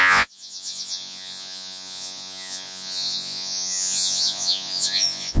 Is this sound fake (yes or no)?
yes